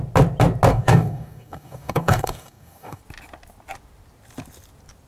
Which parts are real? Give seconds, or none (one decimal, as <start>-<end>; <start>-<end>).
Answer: 0.0-0.7; 3.0-5.1